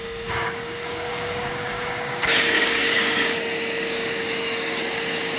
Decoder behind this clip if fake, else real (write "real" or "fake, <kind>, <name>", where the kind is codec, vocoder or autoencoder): fake, codec, DAC